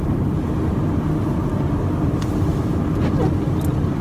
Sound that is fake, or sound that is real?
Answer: real